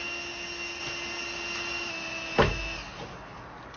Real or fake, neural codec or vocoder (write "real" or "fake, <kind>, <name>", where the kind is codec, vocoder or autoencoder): real